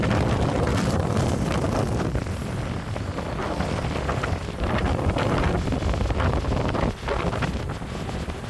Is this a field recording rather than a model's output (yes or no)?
yes